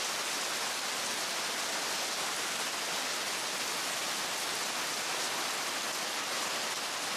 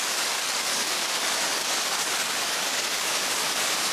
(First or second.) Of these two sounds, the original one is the first